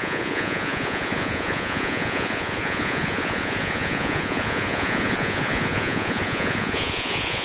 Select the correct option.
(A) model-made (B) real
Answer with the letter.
A